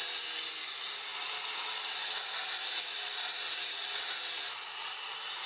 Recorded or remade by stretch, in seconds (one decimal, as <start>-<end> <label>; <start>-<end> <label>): 0.0-5.5 recorded